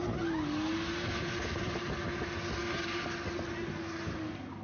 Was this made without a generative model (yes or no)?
yes